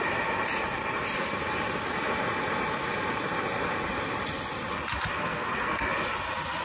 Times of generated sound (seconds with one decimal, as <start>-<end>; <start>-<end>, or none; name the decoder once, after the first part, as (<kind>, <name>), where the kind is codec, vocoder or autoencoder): 5.1-5.9 (codec, SNAC)